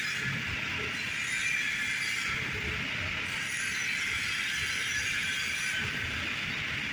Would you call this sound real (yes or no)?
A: yes